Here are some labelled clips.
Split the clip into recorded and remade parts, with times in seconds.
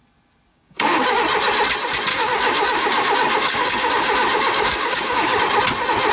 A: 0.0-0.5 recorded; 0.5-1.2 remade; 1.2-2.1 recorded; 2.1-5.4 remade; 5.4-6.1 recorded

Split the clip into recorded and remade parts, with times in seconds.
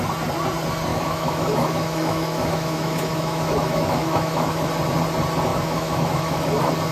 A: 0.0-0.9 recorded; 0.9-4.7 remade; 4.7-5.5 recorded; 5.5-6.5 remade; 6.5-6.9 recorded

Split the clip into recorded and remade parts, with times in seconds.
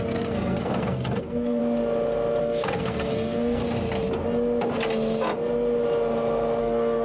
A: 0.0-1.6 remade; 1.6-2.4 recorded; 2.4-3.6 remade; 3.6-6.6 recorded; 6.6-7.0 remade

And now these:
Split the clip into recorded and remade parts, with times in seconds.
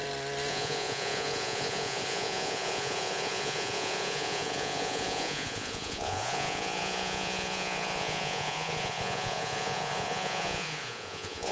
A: 0.0-0.5 recorded; 0.5-11.5 remade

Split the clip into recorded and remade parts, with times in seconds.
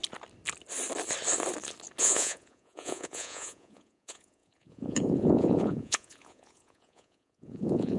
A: 0.0-2.0 recorded; 2.0-8.0 remade